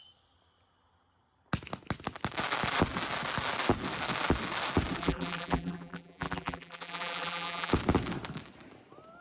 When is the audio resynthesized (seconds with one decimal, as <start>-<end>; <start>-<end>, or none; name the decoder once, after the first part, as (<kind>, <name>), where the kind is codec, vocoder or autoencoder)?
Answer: 5.0-7.7 (vocoder, BigVGAN v2)